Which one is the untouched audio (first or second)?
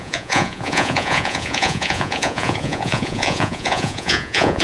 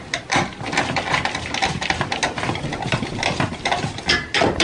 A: second